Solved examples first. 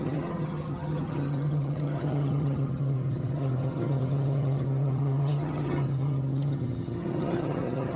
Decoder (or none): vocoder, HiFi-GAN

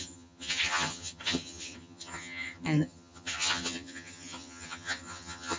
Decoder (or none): vocoder, HiFi-GAN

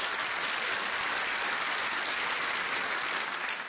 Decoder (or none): none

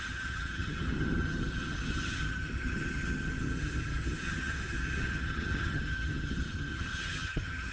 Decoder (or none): vocoder, HiFi-GAN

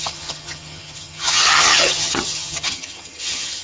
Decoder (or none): vocoder, HiFi-GAN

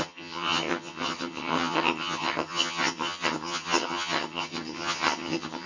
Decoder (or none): vocoder, HiFi-GAN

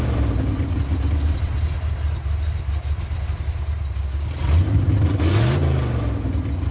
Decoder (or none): none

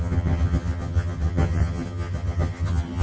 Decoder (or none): vocoder, HiFi-GAN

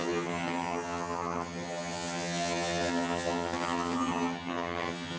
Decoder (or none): vocoder, HiFi-GAN